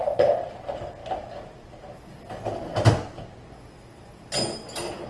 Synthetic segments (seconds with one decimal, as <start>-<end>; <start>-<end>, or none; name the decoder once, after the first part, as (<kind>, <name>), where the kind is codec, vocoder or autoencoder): none